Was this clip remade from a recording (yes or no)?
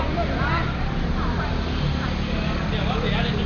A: no